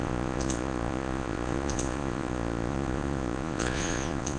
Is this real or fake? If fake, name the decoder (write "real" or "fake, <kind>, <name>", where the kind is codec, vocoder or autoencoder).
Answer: fake, vocoder, Vocos